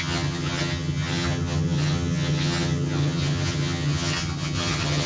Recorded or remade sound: remade